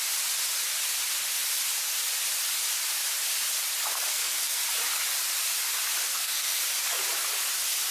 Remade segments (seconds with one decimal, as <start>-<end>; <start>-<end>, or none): 3.9-4.6; 6.1-6.6